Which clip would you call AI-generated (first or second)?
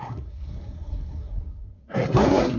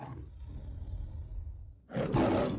first